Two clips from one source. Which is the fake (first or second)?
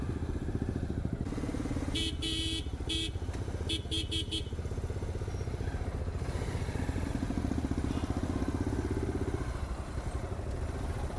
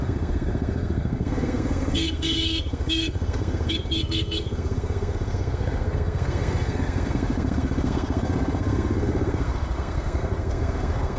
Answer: second